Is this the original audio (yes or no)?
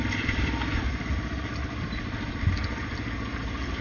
yes